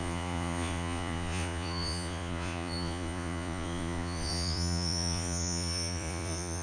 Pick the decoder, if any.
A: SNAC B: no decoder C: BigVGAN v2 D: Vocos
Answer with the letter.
D